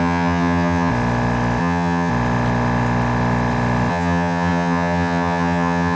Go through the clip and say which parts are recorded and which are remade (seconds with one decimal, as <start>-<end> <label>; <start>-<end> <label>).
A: 0.0-0.9 remade; 0.9-1.6 recorded; 1.6-2.1 remade; 2.1-3.9 recorded; 3.9-6.0 remade